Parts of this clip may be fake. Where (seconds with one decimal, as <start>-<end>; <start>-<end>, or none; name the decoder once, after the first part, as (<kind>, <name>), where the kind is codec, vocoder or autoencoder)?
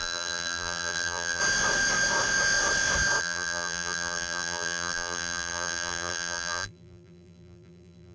0.0-1.4 (vocoder, BigVGAN v2); 3.2-8.1